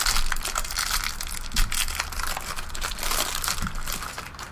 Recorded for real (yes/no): yes